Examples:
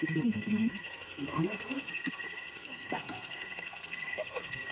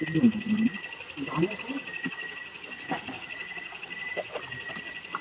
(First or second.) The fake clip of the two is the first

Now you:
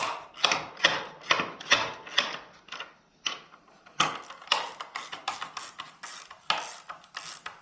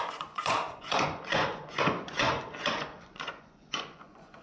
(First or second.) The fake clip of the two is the second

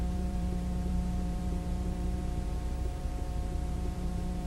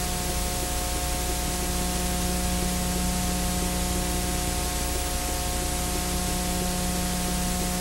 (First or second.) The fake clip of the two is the first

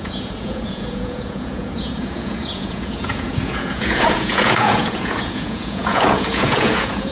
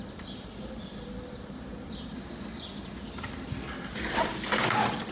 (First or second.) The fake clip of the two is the first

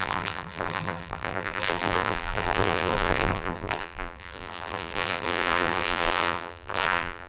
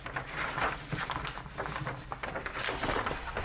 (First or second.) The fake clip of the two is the first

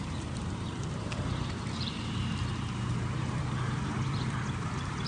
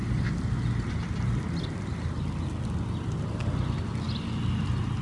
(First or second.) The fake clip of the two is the first